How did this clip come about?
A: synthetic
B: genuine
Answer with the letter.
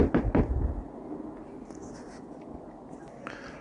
B